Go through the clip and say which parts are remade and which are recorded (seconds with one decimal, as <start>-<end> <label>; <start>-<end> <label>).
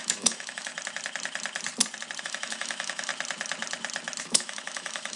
0.0-0.7 remade; 0.7-2.2 recorded; 2.2-3.1 remade; 3.1-4.2 recorded; 4.2-5.2 remade